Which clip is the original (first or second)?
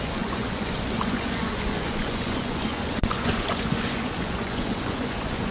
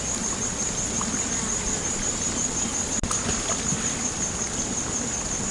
second